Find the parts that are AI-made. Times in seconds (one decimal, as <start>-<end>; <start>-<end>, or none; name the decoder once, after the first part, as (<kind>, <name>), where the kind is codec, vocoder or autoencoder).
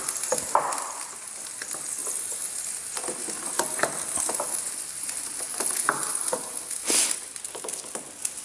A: 5.5-6.1 (vocoder, BigVGAN v2)